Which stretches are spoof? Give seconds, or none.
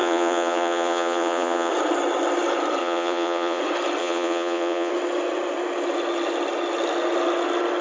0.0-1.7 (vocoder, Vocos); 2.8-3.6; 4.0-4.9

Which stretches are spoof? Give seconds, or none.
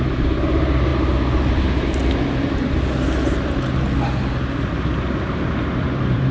0.0-0.9 (vocoder, BigVGAN v2); 4.7-6.3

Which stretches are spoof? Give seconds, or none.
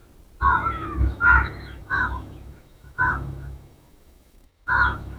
0.7-5.2 (autoencoder, DAC-VAE)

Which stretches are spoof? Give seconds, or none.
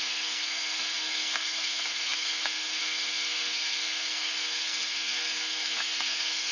0.0-6.5 (codec, SNAC)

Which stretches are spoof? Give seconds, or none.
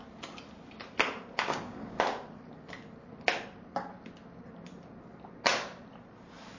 1.5-2.0 (codec, DAC)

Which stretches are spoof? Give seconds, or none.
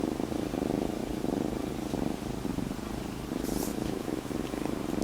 3.7-4.3 (autoencoder, DAC-VAE)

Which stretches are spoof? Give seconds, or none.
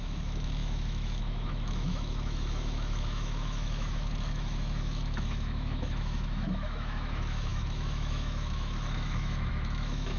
0.0-10.2 (autoencoder, DAC-VAE)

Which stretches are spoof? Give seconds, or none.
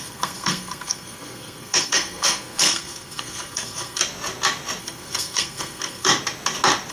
0.0-4.0 (codec, SNAC); 4.8-6.1